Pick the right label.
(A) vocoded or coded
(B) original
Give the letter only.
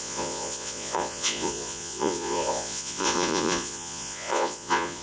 A